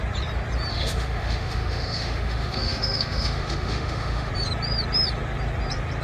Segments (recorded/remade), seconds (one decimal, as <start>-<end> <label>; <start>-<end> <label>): 0.0-0.7 recorded; 0.7-4.3 remade; 4.3-6.0 recorded